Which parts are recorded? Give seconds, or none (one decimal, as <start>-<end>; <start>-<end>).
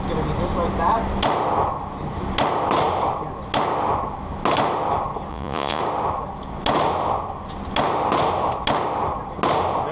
0.0-5.3; 5.8-9.9